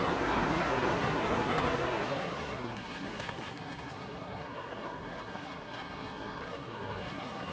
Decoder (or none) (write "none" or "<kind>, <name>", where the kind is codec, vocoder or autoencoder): codec, SNAC